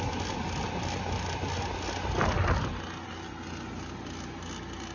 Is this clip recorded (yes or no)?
yes